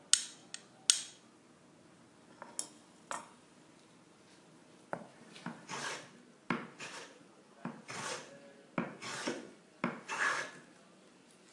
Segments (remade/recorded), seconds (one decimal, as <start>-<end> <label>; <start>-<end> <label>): 0.0-9.0 recorded; 9.0-9.6 remade; 9.6-11.5 recorded